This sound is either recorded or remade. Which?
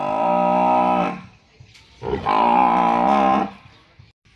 recorded